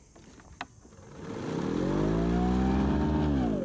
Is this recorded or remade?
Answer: recorded